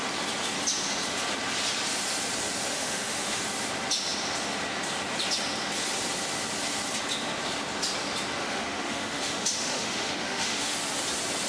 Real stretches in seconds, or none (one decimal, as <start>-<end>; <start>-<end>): 0.0-2.7; 3.4-8.4; 10.7-11.5